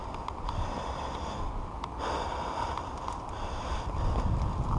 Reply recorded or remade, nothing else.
remade